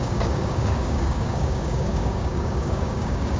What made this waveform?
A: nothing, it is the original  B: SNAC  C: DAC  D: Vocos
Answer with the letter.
C